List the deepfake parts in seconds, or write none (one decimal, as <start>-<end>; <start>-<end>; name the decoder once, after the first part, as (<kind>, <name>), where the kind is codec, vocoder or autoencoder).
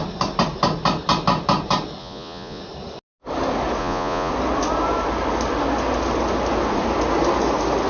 2.0-2.6 (vocoder, Vocos); 3.8-4.3